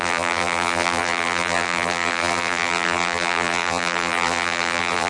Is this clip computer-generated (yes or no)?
yes